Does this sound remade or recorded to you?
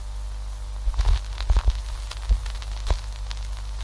recorded